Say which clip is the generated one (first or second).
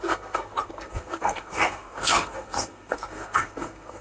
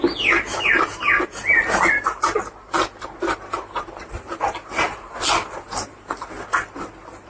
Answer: first